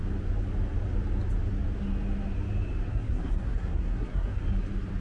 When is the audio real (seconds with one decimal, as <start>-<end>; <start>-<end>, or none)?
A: 0.0-2.9; 4.4-5.0